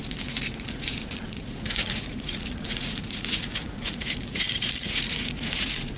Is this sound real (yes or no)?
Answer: no